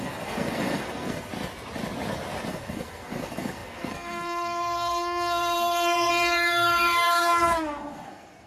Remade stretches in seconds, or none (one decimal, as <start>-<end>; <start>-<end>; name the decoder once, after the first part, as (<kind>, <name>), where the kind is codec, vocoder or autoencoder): 0.0-1.3 (codec, SNAC); 2.5-8.5